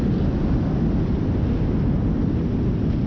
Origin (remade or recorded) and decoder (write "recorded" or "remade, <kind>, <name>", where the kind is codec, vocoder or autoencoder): recorded